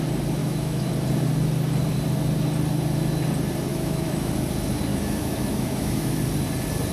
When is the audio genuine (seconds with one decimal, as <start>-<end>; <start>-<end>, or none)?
0.0-0.4; 0.9-3.7; 4.3-4.9; 6.2-6.9